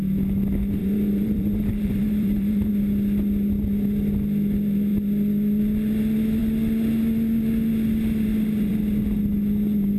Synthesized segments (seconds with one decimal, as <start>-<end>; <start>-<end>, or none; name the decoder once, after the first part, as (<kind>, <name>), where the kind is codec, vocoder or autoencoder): 0.8-2.7 (vocoder, BigVGAN v2)